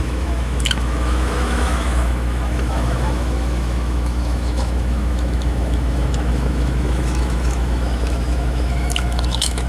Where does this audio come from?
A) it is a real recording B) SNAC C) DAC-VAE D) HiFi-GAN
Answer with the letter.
C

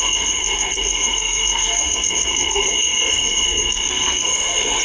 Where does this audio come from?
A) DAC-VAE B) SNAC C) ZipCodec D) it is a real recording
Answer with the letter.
B